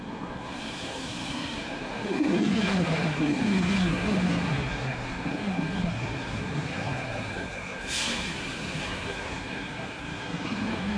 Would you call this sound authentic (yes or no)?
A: no